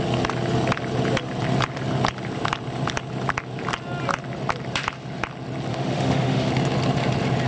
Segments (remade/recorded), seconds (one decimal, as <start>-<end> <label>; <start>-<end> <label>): 0.0-5.7 recorded; 5.7-6.5 remade; 6.5-7.5 recorded